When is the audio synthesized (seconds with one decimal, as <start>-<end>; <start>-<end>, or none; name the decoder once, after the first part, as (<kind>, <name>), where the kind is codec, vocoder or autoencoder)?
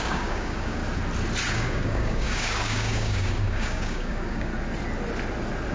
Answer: 0.0-0.8 (codec, DAC); 1.5-4.5